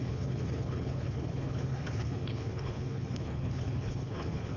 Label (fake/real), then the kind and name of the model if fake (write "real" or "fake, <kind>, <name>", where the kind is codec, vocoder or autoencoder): fake, codec, HILCodec